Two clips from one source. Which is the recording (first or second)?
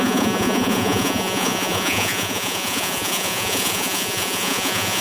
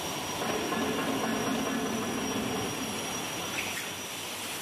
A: second